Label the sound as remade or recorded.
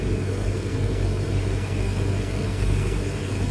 remade